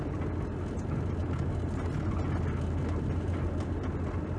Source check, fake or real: real